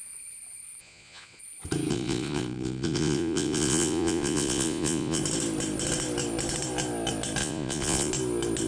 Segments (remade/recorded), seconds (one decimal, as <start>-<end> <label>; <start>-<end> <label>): 0.0-0.8 recorded; 0.8-1.4 remade; 1.4-1.9 recorded; 1.9-5.2 remade; 5.2-7.4 recorded; 7.4-8.1 remade; 8.1-8.7 recorded